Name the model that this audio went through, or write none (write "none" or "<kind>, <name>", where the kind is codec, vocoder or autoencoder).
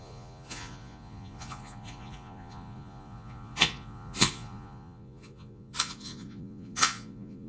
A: vocoder, Vocos